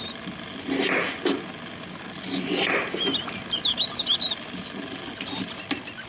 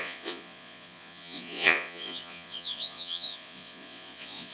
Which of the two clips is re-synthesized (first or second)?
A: second